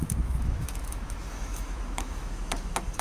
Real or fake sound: fake